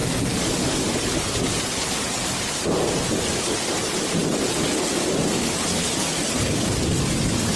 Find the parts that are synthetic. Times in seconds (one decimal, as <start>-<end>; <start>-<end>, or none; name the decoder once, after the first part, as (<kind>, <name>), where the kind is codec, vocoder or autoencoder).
none